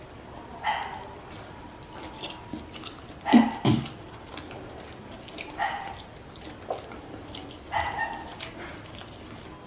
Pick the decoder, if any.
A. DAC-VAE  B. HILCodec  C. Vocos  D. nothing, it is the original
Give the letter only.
D